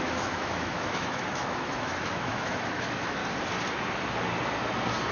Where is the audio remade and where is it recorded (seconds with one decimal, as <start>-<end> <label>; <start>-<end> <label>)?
0.0-3.2 remade; 3.2-5.1 recorded